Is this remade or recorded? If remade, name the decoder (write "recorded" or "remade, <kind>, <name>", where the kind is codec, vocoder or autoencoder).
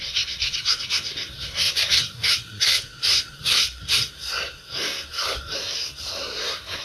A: remade, codec, SNAC